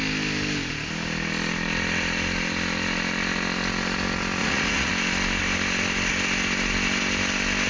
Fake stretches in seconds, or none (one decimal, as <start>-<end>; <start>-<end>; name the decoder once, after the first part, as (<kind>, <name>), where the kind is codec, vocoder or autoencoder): 4.4-4.9 (vocoder, Vocos)